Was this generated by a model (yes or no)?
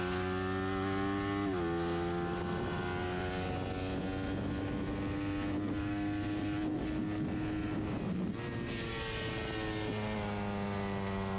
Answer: no